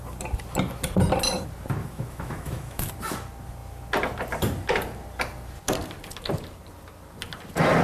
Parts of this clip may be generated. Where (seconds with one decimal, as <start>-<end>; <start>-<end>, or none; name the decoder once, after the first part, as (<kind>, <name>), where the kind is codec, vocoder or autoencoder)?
1.8-2.9 (autoencoder, DAC-VAE)